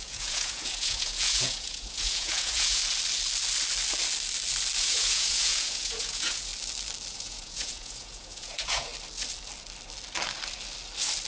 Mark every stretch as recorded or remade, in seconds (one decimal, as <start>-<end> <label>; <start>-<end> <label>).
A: 0.0-2.8 remade; 2.8-4.8 recorded; 4.8-6.5 remade; 6.5-7.1 recorded; 7.1-8.9 remade; 8.9-11.3 recorded